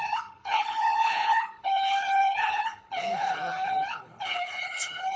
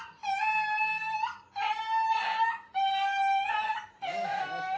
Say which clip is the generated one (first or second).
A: first